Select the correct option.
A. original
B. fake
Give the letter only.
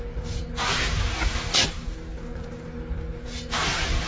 A